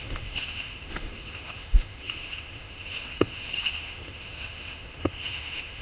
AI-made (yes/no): yes